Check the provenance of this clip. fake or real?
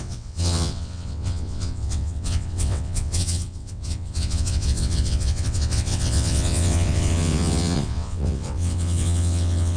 fake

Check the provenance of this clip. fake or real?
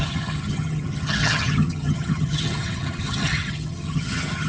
fake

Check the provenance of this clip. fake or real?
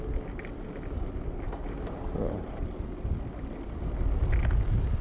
real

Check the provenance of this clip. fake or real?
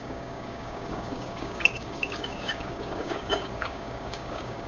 fake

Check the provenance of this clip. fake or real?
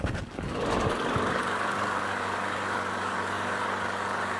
fake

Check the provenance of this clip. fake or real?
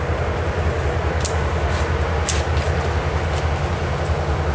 real